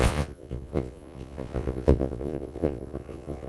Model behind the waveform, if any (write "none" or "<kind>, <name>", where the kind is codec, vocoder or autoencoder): vocoder, Vocos